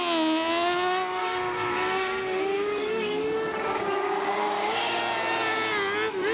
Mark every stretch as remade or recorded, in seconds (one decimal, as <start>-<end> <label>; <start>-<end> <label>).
0.0-1.2 recorded; 1.2-5.0 remade; 5.0-6.3 recorded